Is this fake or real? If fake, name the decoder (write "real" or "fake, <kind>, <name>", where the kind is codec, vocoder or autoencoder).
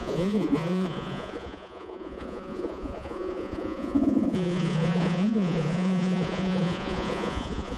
fake, vocoder, Vocos